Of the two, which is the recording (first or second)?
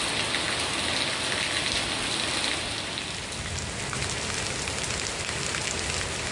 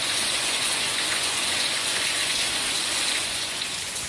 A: first